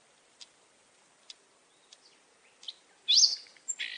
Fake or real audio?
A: real